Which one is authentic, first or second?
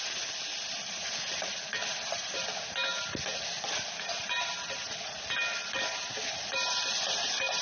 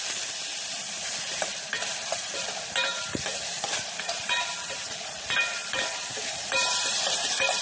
first